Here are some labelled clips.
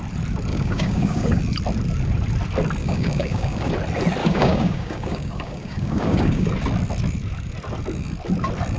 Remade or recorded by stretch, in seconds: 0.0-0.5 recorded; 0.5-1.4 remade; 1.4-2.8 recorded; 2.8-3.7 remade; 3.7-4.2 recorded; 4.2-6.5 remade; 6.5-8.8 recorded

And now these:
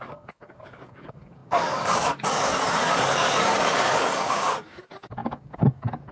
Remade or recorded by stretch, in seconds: 0.0-6.1 remade

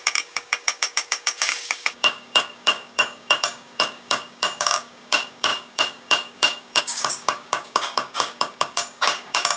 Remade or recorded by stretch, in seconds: 0.0-9.6 remade

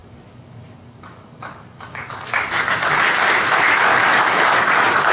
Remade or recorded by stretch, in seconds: 0.0-3.1 remade; 3.1-3.9 recorded; 3.9-4.6 remade; 4.6-5.1 recorded